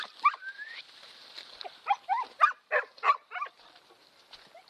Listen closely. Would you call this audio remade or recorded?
recorded